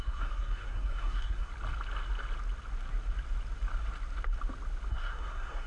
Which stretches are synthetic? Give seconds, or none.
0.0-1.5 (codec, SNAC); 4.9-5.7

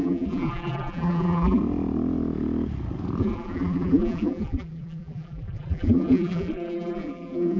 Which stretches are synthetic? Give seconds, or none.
0.0-1.6 (vocoder, BigVGAN v2); 3.2-7.6

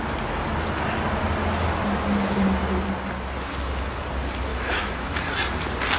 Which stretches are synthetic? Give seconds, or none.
4.5-5.2 (autoencoder, DAC-VAE)

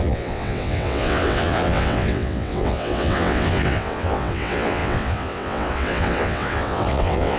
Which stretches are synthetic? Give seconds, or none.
0.0-7.4 (vocoder, WaveNeXt)

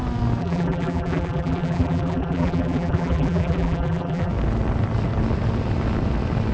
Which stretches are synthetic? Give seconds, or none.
0.4-4.3 (vocoder, BigVGAN v2)

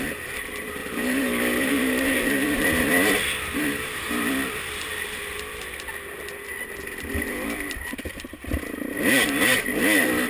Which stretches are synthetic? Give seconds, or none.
0.8-2.8 (vocoder, BigVGAN v2)

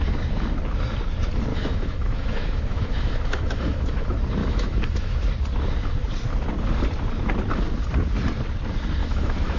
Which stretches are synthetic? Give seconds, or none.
1.5-4.0 (autoencoder, DAC-VAE); 4.4-5.1; 9.0-9.6